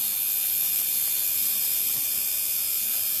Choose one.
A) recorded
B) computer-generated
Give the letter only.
B